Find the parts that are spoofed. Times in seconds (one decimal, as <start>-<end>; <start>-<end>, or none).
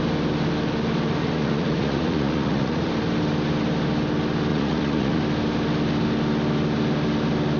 1.2-2.9; 4.5-5.2